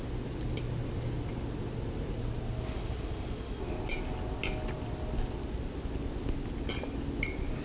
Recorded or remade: recorded